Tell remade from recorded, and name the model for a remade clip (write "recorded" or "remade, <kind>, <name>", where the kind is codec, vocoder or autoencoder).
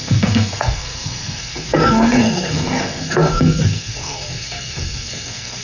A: remade, codec, SNAC